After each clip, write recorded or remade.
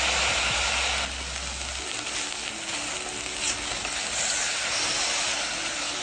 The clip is recorded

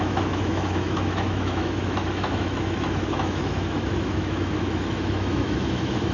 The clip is remade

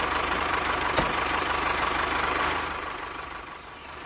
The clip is remade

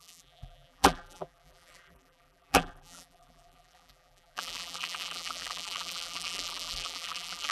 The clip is remade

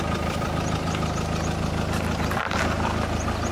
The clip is remade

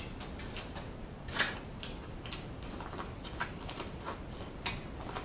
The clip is recorded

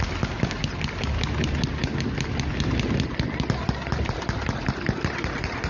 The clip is recorded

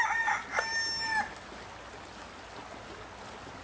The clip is recorded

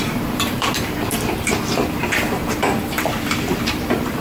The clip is remade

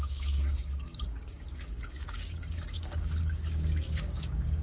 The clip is remade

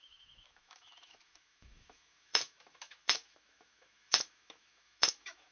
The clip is remade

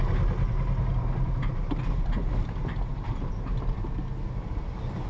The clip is recorded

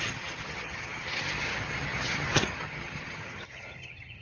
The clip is remade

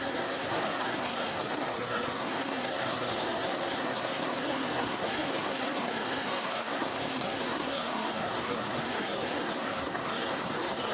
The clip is remade